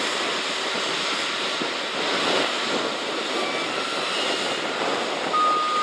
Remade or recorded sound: recorded